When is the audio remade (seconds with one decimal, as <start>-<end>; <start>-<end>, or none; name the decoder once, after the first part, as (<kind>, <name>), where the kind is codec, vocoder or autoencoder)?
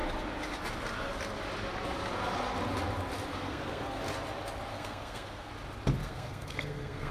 3.3-4.0 (codec, SNAC); 4.7-5.5; 6.0-7.1